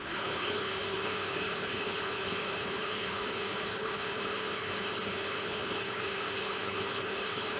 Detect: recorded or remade remade